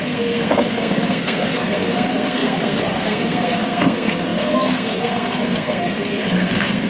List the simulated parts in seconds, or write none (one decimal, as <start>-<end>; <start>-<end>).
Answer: 0.0-6.9